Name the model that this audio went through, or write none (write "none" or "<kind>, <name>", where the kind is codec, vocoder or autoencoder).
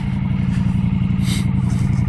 none